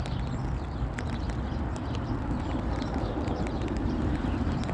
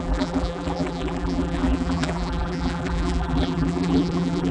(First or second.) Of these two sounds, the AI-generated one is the second